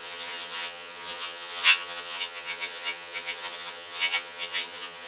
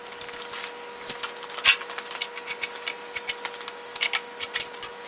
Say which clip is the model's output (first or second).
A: first